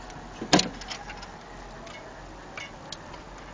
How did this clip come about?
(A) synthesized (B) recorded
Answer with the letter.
B